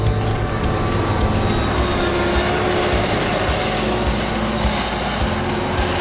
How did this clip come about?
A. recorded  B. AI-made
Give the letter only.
A